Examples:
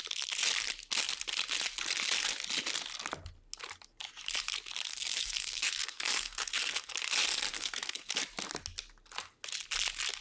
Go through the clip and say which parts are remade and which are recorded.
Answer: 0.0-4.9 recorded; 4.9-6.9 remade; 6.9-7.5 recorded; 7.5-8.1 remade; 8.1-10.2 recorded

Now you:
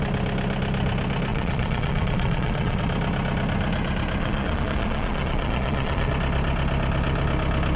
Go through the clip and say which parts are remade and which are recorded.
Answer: 0.0-1.3 recorded; 1.3-2.8 remade; 2.8-4.2 recorded; 4.2-6.1 remade; 6.1-7.8 recorded

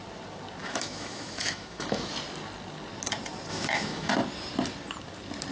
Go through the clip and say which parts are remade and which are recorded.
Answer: 0.0-0.6 recorded; 0.6-2.1 remade; 2.1-3.5 recorded; 3.5-4.1 remade; 4.1-5.5 recorded

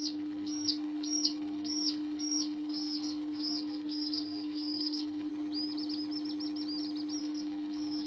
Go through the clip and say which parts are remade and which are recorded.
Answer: 0.0-5.3 remade; 5.3-7.2 recorded; 7.2-8.1 remade

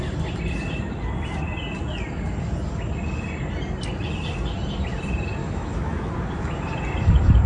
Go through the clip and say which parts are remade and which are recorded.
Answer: 0.0-5.4 recorded; 5.4-6.1 remade; 6.1-7.5 recorded

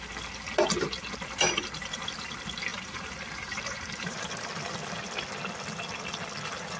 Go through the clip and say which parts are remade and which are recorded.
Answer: 0.0-2.7 recorded; 2.7-4.3 remade; 4.3-6.8 recorded

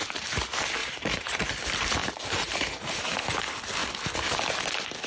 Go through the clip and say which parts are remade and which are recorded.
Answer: 0.0-0.8 recorded; 0.8-1.5 remade; 1.5-2.0 recorded; 2.0-3.2 remade; 3.2-5.1 recorded

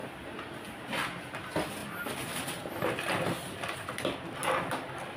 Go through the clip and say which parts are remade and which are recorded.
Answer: 0.0-5.2 recorded